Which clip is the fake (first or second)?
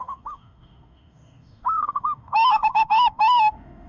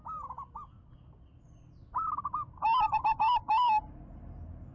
first